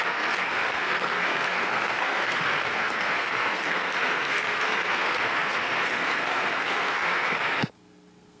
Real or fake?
fake